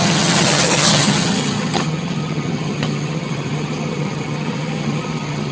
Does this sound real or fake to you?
fake